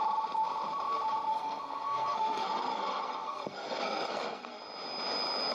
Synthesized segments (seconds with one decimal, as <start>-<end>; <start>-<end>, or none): 1.3-4.6